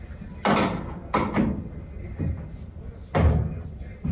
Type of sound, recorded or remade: recorded